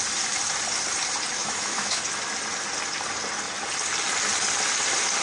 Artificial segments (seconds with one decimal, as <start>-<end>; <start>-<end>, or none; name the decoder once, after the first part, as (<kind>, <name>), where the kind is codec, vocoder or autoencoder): 1.4-2.0 (autoencoder, DAC-VAE)